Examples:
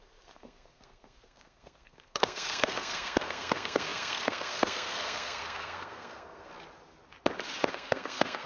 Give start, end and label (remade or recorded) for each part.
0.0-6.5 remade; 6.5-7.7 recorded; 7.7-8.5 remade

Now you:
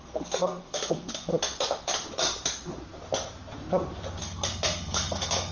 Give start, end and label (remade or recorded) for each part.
0.0-1.3 remade; 1.3-4.2 recorded; 4.2-5.5 remade

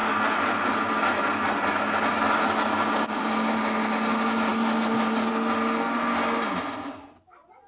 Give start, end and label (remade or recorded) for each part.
0.0-7.7 recorded

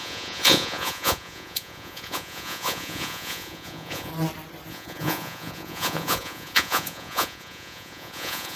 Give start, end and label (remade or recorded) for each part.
0.0-4.1 remade; 4.1-4.7 recorded; 4.7-8.6 remade

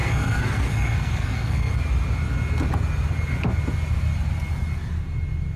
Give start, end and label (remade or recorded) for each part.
0.0-1.7 remade; 1.7-5.6 recorded